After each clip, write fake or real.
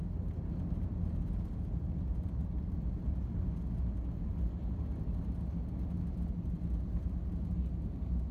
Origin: real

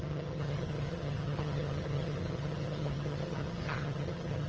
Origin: fake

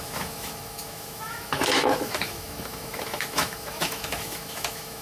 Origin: fake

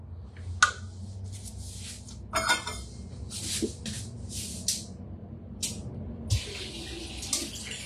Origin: real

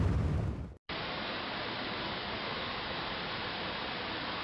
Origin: real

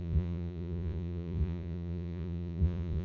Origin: fake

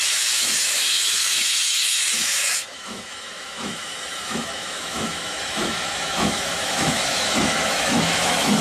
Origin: fake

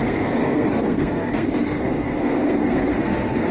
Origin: fake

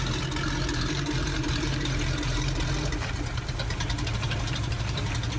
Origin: fake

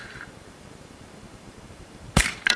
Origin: fake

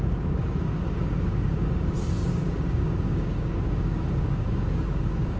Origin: fake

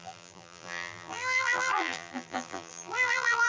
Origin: fake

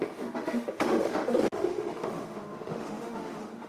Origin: fake